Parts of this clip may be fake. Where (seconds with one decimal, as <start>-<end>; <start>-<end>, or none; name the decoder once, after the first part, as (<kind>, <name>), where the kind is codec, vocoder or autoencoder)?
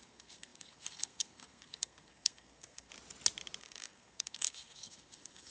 0.0-2.9 (codec, SNAC); 3.6-5.5